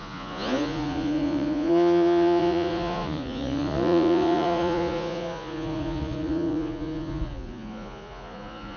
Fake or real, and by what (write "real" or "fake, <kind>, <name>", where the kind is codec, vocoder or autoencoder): fake, vocoder, Vocos